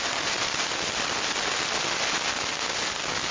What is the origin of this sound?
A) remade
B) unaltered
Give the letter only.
B